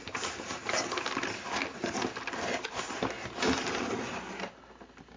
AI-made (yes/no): no